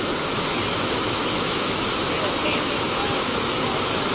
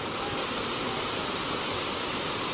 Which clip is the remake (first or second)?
first